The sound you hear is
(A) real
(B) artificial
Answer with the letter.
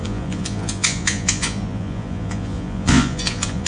B